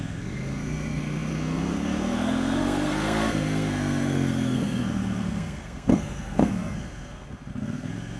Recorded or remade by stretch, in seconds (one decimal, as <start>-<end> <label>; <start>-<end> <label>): 0.0-8.2 remade